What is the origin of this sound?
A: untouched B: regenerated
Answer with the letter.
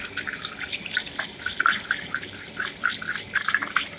A